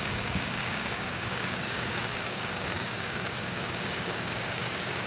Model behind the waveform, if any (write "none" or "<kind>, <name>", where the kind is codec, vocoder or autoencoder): codec, DAC